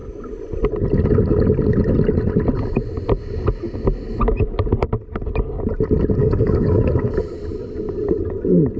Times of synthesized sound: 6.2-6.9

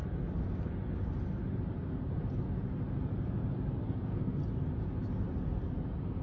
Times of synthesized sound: 3.7-4.4

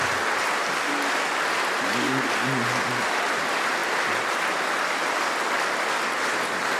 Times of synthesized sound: none

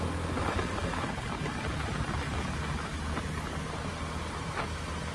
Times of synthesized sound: none

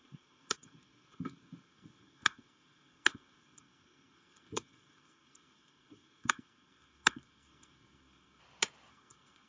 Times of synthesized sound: 0.0-8.4; 8.9-9.5

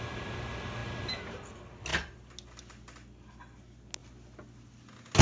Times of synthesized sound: none